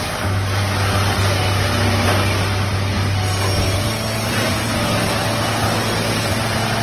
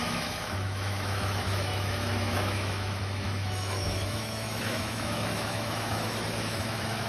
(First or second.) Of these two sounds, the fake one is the second